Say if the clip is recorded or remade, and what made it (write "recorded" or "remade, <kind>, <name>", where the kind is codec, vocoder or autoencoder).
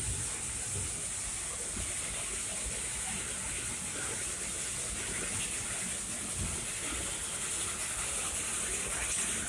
recorded